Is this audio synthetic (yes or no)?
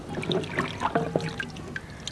no